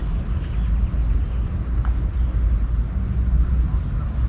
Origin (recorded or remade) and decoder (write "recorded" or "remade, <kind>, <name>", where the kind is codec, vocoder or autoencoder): recorded